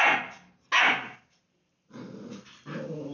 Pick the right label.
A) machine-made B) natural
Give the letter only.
B